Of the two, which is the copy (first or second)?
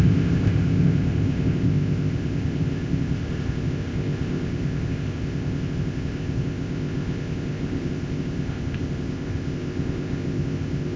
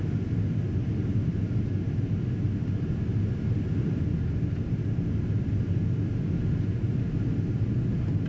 first